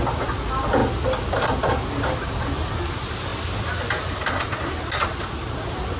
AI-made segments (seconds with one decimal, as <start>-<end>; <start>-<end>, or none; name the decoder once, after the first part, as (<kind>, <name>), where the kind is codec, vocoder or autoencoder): none